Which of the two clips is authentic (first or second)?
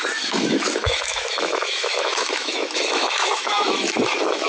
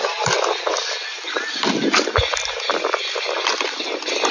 second